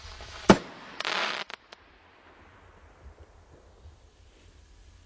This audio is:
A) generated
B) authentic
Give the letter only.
A